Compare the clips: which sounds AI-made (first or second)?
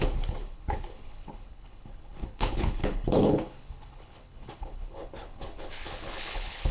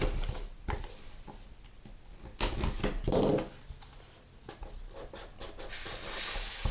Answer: first